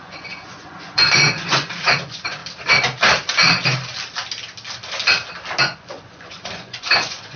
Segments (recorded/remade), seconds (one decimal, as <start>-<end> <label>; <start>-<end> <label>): 0.0-2.4 remade; 2.4-5.6 recorded; 5.6-7.4 remade